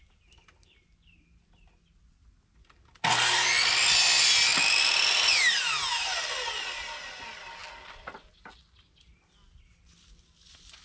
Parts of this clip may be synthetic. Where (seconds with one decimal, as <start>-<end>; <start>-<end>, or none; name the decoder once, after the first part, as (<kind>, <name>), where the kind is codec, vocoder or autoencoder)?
none